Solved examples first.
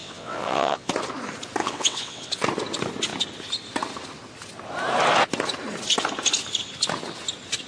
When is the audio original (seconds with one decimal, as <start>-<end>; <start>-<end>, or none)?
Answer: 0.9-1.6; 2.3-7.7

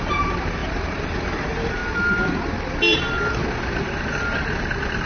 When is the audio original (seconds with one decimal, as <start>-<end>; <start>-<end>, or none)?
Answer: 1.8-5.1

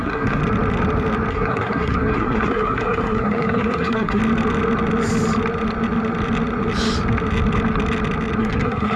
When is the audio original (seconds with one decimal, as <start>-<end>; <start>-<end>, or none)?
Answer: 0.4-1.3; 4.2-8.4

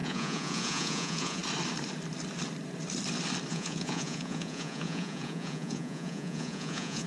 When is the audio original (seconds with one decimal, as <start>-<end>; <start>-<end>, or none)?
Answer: 1.4-3.5

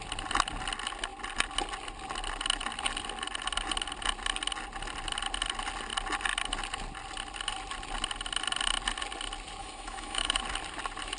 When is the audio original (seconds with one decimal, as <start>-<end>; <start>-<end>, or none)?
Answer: 0.0-9.6; 10.4-11.2

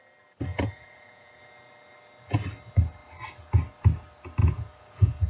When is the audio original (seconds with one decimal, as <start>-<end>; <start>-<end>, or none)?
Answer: 0.0-0.5; 1.4-4.4

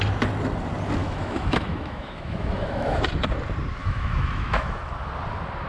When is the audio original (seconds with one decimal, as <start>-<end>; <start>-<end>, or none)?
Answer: 0.0-1.0; 3.0-3.8; 4.9-5.7